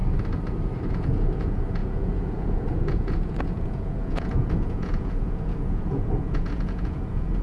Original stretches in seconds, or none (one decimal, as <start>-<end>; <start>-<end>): 0.0-0.9